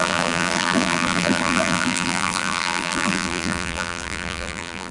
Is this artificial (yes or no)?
yes